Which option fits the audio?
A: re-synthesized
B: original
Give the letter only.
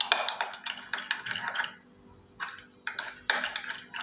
B